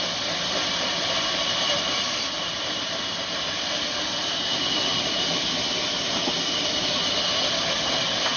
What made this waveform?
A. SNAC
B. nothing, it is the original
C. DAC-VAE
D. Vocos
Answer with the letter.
B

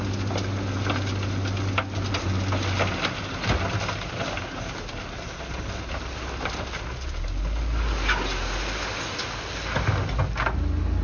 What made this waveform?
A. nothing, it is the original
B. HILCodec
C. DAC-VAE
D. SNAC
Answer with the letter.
A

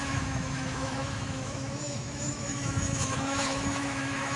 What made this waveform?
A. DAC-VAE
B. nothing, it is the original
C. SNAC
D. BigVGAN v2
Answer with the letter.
A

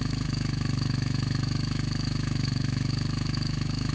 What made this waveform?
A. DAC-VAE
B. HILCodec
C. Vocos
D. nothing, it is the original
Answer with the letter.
A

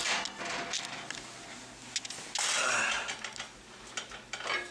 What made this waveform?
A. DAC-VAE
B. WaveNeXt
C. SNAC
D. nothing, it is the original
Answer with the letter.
D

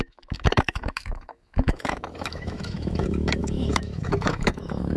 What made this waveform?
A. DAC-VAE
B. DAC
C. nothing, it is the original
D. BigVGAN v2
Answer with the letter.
A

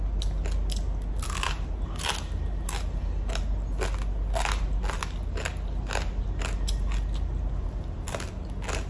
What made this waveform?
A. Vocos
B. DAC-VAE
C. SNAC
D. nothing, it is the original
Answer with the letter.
D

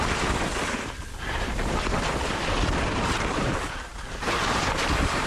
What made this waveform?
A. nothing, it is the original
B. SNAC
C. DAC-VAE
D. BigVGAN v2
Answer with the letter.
A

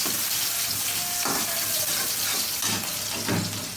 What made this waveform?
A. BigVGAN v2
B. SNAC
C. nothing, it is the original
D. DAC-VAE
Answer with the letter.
C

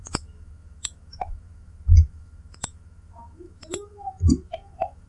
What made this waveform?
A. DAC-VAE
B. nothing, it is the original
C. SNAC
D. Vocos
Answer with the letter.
A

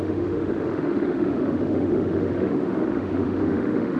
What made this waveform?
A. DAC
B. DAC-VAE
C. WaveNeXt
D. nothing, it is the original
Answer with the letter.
B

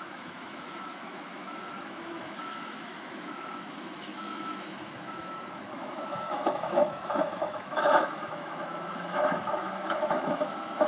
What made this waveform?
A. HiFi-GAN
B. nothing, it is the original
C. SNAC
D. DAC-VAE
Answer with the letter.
D